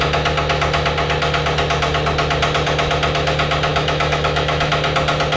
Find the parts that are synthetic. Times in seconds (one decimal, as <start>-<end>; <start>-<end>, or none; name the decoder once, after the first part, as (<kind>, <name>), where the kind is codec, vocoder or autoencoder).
3.7-4.7 (autoencoder, DAC-VAE)